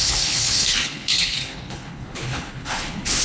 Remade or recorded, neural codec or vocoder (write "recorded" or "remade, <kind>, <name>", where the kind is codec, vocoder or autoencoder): remade, codec, HILCodec